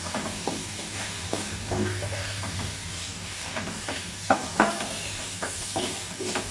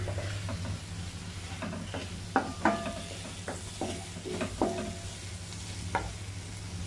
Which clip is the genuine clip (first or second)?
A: second